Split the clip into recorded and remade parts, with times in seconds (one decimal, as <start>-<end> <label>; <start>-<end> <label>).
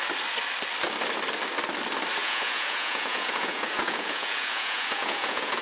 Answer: 0.0-2.2 recorded; 2.2-5.6 remade